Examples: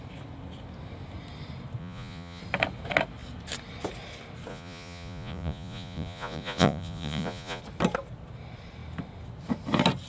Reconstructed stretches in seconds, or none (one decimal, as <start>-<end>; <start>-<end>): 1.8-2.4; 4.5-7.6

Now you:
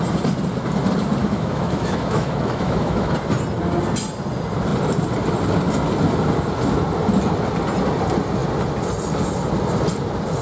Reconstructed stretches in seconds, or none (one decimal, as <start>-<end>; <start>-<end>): 1.2-3.1

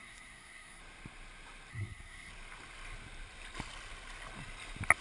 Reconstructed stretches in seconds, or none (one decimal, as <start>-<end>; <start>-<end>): 0.0-0.8; 1.7-2.3

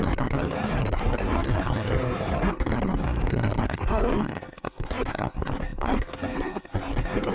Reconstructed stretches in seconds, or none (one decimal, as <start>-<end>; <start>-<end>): 0.0-7.3

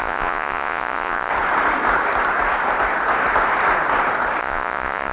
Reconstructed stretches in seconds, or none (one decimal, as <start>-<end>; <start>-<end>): 0.0-1.3; 4.4-5.1

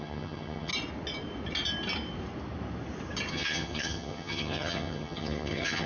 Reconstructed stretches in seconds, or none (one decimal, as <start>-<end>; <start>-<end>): 0.0-0.7; 3.3-5.9

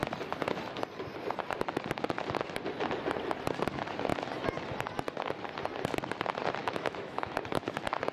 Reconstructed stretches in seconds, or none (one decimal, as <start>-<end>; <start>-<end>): 6.6-7.4

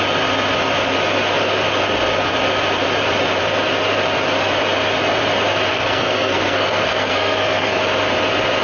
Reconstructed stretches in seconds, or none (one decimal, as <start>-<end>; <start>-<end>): 5.7-7.8